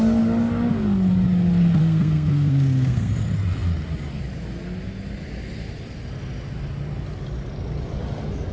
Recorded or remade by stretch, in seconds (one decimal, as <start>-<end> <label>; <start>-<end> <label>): 0.0-1.8 recorded; 1.8-3.1 remade; 3.1-8.5 recorded